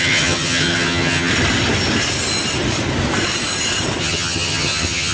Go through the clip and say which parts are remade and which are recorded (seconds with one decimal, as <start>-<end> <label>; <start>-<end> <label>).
0.0-1.3 remade; 1.3-4.0 recorded; 4.0-5.1 remade